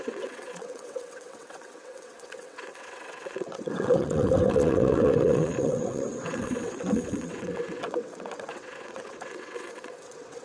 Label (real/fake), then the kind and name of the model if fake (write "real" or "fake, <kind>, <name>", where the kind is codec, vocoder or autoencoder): fake, vocoder, WaveNeXt